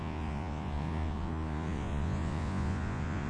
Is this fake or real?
fake